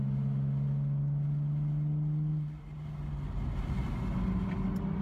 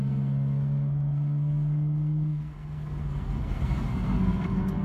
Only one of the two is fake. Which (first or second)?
second